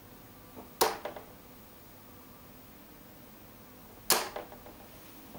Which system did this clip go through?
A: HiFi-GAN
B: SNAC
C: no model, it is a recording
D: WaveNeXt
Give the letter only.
C